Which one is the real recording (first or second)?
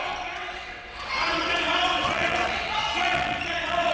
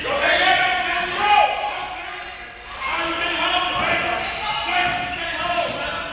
second